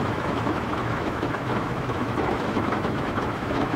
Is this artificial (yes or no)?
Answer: yes